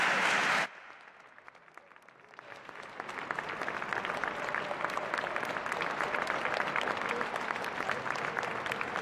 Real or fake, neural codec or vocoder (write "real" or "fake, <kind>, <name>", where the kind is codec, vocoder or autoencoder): real